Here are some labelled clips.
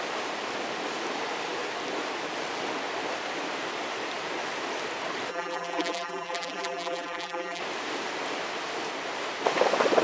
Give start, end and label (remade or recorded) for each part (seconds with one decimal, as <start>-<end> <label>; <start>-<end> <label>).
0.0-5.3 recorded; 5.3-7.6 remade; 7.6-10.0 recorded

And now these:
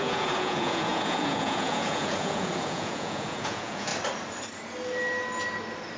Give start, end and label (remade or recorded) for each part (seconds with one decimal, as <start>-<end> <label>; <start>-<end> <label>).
0.0-3.9 remade; 3.9-6.0 recorded

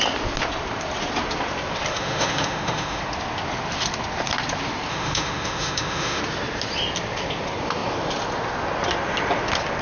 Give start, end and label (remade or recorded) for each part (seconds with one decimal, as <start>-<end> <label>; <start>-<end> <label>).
0.0-1.9 recorded; 1.9-3.0 remade; 3.0-4.9 recorded; 4.9-6.2 remade; 6.2-9.8 recorded